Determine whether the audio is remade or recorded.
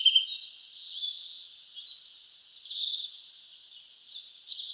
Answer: recorded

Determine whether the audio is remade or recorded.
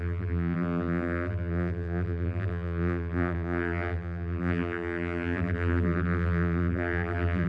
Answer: remade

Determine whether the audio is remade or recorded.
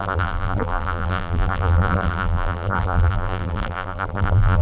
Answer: remade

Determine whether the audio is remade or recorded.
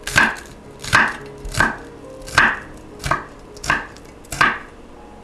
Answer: recorded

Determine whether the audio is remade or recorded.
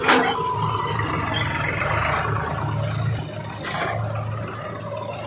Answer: recorded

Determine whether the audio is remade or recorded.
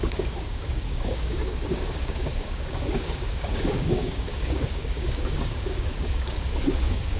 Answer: remade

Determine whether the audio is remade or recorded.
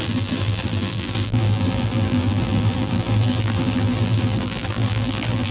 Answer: remade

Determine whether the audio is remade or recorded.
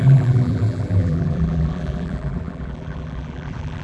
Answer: remade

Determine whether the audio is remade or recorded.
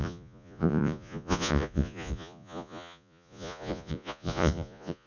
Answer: remade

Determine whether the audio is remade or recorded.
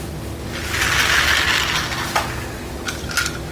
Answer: recorded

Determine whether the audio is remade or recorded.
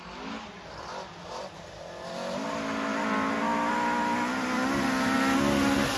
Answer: recorded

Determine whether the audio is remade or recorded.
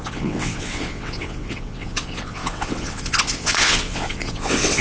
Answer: remade